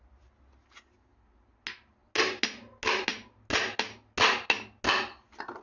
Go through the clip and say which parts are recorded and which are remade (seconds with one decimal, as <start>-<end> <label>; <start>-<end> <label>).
0.0-5.6 recorded

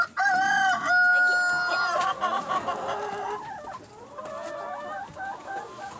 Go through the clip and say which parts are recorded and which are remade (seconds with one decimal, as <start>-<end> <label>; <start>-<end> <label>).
0.0-6.0 recorded

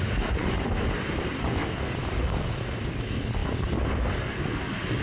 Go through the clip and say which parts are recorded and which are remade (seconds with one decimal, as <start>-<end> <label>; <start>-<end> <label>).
0.0-1.6 recorded; 1.6-2.4 remade; 2.4-5.0 recorded

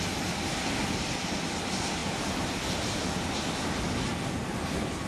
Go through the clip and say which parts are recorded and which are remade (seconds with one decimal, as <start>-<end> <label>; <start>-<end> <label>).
0.0-2.0 recorded; 2.0-2.6 remade; 2.6-5.1 recorded

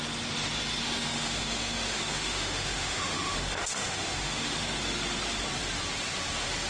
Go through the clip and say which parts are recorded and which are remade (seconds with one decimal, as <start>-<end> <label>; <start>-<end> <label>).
0.0-0.8 recorded; 0.8-4.8 remade; 4.8-6.7 recorded